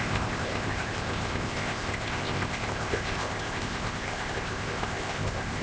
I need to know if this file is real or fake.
fake